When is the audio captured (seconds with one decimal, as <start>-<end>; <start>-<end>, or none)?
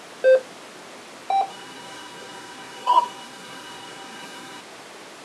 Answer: 0.0-1.5; 4.6-5.2